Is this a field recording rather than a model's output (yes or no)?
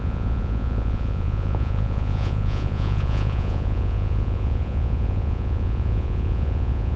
no